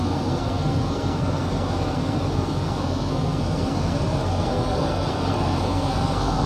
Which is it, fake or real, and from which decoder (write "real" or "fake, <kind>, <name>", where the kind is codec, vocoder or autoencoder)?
fake, codec, SNAC